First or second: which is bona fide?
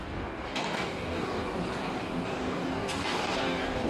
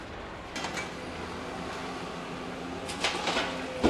second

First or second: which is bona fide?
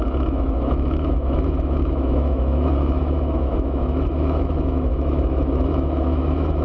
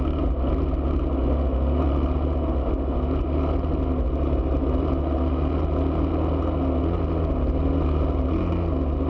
second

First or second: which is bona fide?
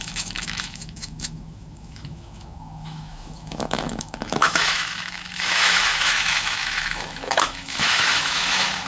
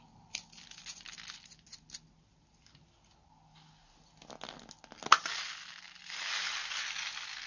second